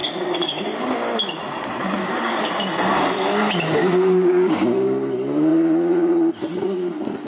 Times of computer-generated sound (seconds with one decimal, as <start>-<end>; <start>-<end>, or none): 0.0-0.9; 2.0-2.5